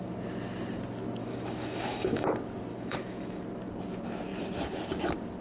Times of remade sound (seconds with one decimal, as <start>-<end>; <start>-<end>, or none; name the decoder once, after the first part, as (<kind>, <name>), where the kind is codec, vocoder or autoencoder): 1.2-2.3 (autoencoder, DAC-VAE); 2.7-3.4